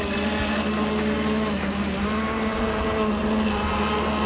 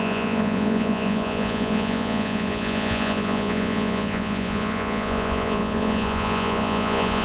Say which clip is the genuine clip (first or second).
first